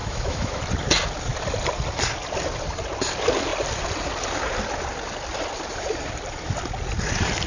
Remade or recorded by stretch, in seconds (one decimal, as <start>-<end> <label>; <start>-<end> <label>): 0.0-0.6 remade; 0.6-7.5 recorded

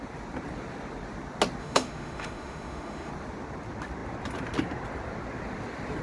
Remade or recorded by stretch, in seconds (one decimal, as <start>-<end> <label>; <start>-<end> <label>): 0.0-1.6 recorded; 1.6-3.1 remade; 3.1-6.0 recorded

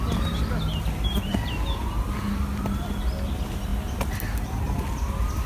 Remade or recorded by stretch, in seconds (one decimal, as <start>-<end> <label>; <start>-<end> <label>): 0.0-5.5 recorded

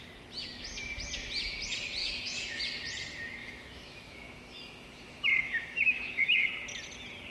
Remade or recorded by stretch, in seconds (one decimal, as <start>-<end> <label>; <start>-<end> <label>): 0.0-2.0 recorded; 2.0-2.6 remade; 2.6-3.4 recorded; 3.4-6.5 remade; 6.5-7.3 recorded

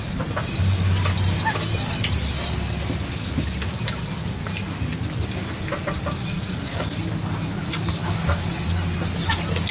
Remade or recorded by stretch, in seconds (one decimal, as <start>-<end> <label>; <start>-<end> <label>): 0.0-8.0 recorded; 8.0-8.5 remade; 8.5-9.7 recorded

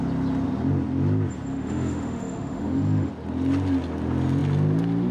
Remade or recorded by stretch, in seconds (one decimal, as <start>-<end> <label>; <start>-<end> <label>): 0.0-1.5 recorded; 1.5-3.1 remade; 3.1-5.1 recorded

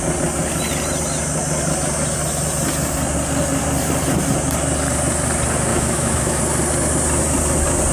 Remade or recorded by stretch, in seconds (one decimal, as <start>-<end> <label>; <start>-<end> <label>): 0.0-5.7 recorded; 5.7-6.4 remade; 6.4-7.9 recorded

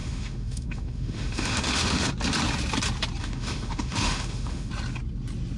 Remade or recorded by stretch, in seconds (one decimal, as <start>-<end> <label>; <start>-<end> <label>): 0.0-2.1 remade; 2.1-3.2 recorded; 3.2-4.7 remade; 4.7-5.6 recorded